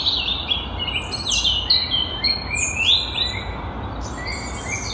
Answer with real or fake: real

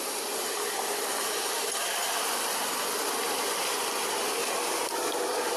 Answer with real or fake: real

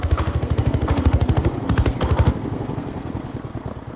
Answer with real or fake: fake